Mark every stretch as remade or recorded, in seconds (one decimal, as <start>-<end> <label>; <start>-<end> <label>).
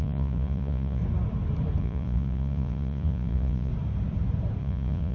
0.0-1.0 remade; 1.0-1.8 recorded; 1.8-3.7 remade; 3.7-4.6 recorded; 4.6-5.1 remade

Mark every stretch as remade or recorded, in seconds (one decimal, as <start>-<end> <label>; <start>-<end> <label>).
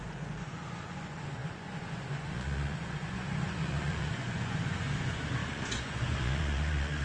0.0-7.0 remade